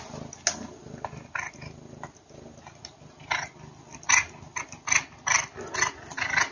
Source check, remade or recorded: recorded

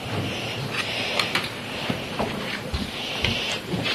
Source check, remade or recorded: remade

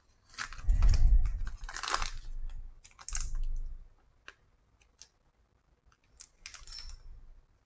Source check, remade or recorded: recorded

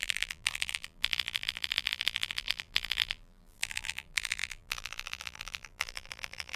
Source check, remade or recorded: remade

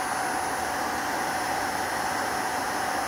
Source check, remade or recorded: recorded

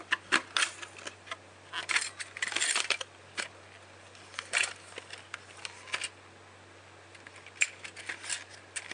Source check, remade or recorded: recorded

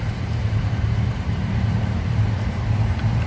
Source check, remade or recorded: remade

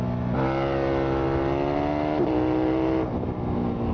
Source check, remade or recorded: recorded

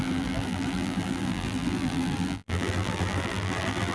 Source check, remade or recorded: remade